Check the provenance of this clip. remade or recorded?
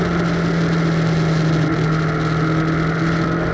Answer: recorded